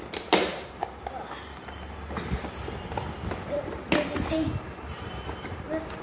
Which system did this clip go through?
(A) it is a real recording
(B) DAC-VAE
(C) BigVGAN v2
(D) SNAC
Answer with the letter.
A